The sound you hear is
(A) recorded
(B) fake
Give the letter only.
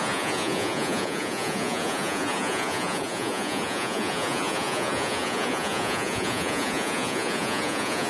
B